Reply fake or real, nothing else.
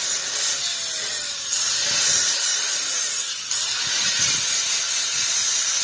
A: real